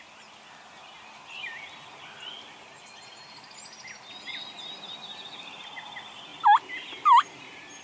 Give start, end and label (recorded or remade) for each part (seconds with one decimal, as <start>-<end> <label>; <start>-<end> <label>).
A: 0.0-7.8 recorded